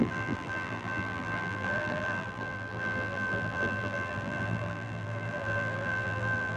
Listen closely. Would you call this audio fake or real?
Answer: fake